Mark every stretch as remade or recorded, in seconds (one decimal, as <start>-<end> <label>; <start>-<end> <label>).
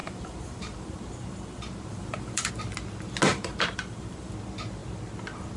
0.0-2.5 remade; 2.5-3.3 recorded; 3.3-4.3 remade; 4.3-5.6 recorded